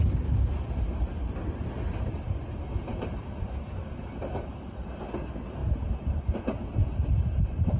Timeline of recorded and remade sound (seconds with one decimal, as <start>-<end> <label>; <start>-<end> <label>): 0.0-7.8 recorded